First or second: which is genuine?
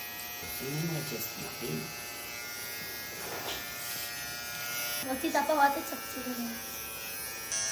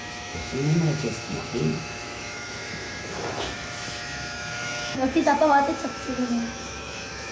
first